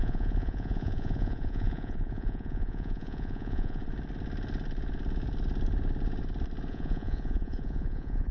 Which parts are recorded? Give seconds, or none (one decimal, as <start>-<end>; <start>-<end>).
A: 3.8-6.7